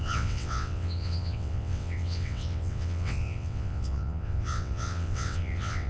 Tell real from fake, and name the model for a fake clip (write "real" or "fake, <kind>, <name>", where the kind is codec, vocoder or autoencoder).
fake, vocoder, WaveNeXt